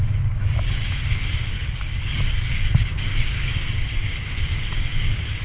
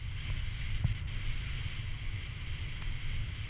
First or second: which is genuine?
second